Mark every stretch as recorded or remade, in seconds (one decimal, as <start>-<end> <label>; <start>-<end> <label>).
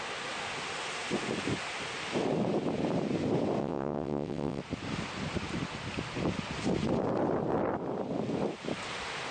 0.0-3.6 recorded; 3.6-4.6 remade; 4.6-9.3 recorded